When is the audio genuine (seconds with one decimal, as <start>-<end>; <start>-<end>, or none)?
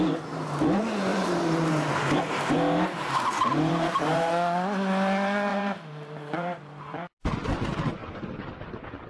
0.0-1.1; 4.3-5.5; 7.3-9.1